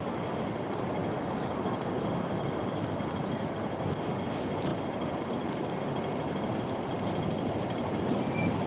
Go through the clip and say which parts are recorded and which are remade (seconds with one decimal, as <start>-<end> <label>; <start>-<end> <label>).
0.0-8.7 recorded